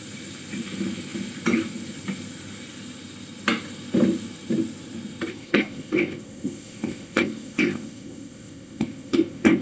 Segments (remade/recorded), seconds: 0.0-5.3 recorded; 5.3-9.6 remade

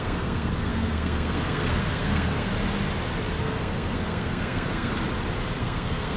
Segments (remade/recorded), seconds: 0.0-2.5 remade; 2.5-3.4 recorded; 3.4-4.9 remade; 4.9-5.6 recorded; 5.6-6.2 remade

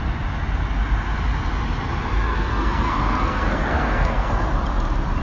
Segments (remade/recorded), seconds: 0.0-2.3 recorded; 2.3-4.5 remade; 4.5-5.2 recorded

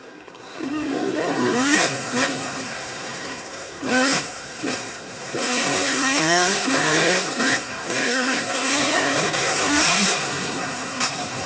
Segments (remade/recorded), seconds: 0.0-11.5 remade

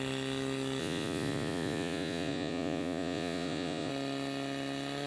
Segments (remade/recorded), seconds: 0.0-0.8 recorded; 0.8-3.9 remade; 3.9-5.1 recorded

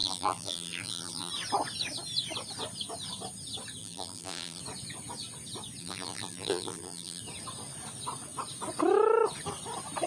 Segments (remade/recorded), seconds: 0.0-1.3 remade; 1.3-3.8 recorded; 3.8-4.6 remade; 4.6-5.8 recorded; 5.8-7.2 remade; 7.2-10.1 recorded

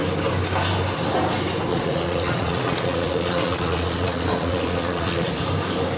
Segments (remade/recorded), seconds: 0.0-1.7 recorded; 1.7-5.3 remade; 5.3-6.0 recorded